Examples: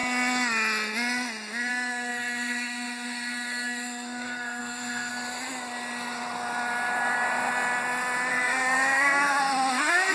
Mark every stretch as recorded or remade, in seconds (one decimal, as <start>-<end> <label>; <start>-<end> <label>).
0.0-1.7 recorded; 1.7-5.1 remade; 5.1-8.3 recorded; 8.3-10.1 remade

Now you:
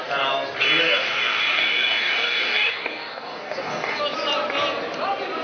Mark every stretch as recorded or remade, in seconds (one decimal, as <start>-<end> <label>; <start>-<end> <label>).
0.0-0.8 recorded; 0.8-4.0 remade; 4.0-5.4 recorded

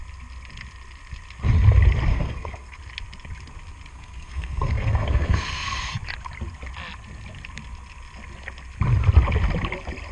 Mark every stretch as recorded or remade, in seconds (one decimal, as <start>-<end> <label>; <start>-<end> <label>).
0.0-2.1 recorded; 2.1-2.8 remade; 2.8-3.9 recorded; 3.9-5.9 remade; 5.9-10.1 recorded